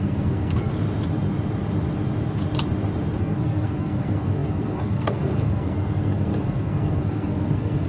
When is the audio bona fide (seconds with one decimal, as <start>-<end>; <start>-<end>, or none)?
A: 0.7-3.2